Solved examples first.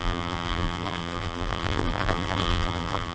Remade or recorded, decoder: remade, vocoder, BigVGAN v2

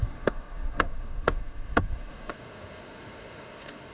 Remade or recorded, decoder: remade, autoencoder, DAC-VAE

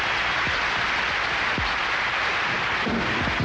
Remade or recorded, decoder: recorded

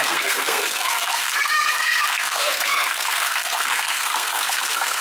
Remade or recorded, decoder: remade, codec, SNAC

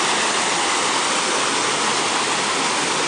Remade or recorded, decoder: recorded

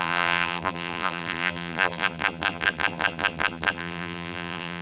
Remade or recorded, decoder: remade, vocoder, BigVGAN v2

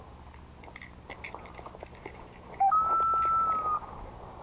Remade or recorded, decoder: recorded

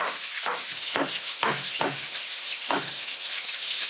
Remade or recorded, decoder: remade, autoencoder, DAC-VAE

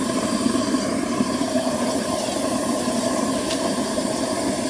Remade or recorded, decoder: remade, vocoder, BigVGAN v2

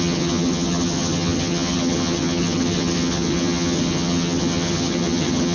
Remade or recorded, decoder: remade, vocoder, HiFi-GAN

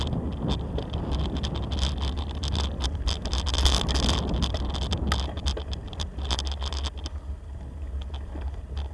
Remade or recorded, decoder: recorded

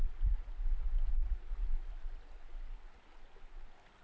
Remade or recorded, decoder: recorded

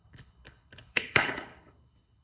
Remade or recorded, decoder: remade, codec, HILCodec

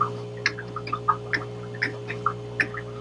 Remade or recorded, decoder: recorded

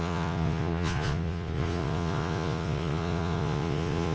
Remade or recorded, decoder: remade, vocoder, Vocos